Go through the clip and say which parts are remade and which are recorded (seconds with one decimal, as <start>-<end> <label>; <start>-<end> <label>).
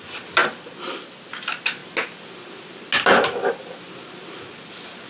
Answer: 0.0-5.1 recorded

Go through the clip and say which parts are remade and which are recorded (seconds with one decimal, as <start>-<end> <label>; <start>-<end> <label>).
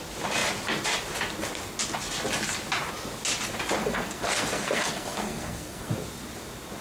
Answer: 0.0-3.8 recorded; 3.8-5.9 remade; 5.9-6.8 recorded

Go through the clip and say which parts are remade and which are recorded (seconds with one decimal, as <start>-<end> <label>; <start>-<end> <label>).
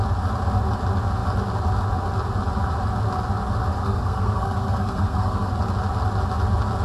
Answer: 0.0-3.8 recorded; 3.8-5.5 remade; 5.5-6.8 recorded